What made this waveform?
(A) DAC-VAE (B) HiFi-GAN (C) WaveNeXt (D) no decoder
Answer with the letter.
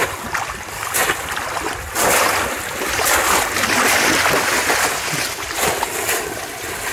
D